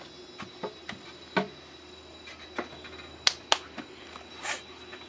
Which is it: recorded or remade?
recorded